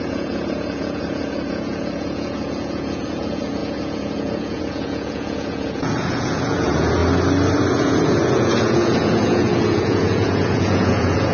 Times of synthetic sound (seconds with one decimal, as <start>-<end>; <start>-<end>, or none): 0.0-7.0; 7.7-11.3